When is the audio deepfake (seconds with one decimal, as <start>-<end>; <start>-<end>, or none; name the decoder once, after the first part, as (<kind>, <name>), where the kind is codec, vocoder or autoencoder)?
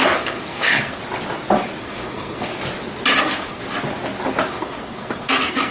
0.0-1.0 (codec, SNAC); 1.8-2.5; 3.2-3.6; 4.5-5.7